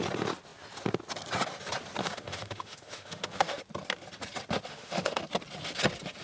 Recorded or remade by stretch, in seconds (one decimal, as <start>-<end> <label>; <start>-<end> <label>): 0.0-2.0 recorded; 2.0-3.6 remade; 3.6-4.7 recorded; 4.7-5.2 remade; 5.2-6.2 recorded